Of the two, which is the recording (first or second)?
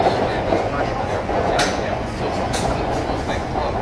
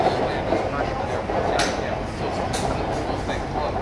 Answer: second